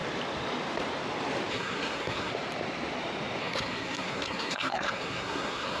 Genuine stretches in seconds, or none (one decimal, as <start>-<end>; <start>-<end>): 0.0-1.5; 2.3-3.4